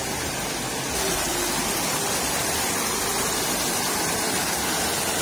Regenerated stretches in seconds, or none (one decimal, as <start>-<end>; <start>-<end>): none